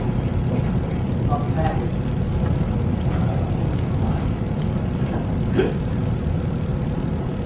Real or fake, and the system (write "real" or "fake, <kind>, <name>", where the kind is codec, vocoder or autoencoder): fake, vocoder, BigVGAN v2